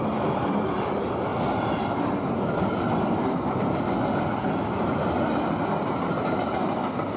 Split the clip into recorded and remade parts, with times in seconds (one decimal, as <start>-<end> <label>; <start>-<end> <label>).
0.0-7.2 recorded